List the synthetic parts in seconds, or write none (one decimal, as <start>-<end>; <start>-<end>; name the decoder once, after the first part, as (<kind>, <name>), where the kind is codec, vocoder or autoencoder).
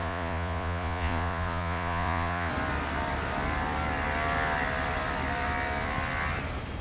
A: 0.0-2.5 (vocoder, Vocos)